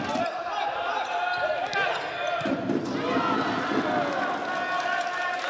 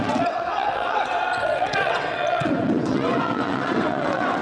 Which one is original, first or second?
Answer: first